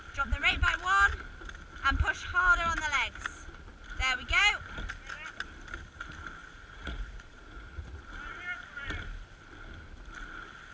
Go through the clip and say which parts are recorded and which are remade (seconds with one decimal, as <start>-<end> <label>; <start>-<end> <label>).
0.0-6.4 recorded; 6.4-8.0 remade; 8.0-10.7 recorded